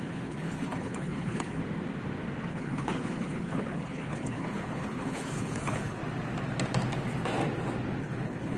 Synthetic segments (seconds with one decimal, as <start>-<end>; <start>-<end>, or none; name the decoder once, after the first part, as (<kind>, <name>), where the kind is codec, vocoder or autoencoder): 0.0-1.6 (codec, HILCodec); 2.5-6.0; 8.0-8.6